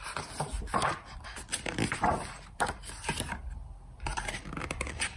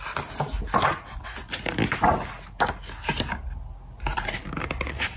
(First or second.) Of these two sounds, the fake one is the first